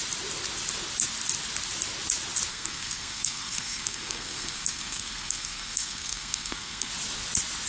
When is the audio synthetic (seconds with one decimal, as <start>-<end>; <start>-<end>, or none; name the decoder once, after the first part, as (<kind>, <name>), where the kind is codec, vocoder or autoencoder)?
2.5-6.9 (codec, SNAC)